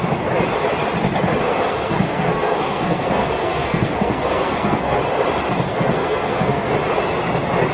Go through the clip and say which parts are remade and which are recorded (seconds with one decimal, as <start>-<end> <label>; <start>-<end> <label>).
0.0-1.5 recorded; 1.5-5.0 remade; 5.0-5.7 recorded; 5.7-6.7 remade; 6.7-7.7 recorded